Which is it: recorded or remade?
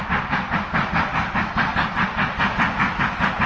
recorded